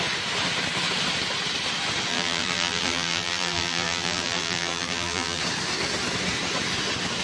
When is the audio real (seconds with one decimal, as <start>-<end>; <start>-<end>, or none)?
0.0-2.1; 5.4-7.2